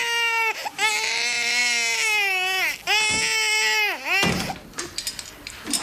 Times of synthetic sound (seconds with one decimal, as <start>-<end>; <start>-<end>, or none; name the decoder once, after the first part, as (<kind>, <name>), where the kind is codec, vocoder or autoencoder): none